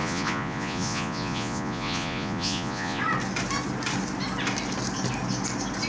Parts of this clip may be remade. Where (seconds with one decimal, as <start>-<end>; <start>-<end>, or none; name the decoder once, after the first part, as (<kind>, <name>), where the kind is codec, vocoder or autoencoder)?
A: 0.0-3.0 (vocoder, Vocos)